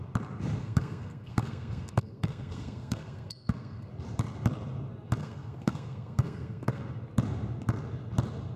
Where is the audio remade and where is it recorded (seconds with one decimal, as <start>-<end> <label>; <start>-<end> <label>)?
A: 0.0-0.6 recorded; 0.6-3.9 remade; 3.9-5.2 recorded; 5.2-6.8 remade; 6.8-8.6 recorded